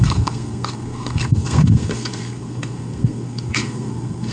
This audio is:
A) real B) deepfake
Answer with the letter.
B